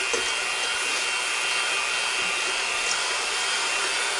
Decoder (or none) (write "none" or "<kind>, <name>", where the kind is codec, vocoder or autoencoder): none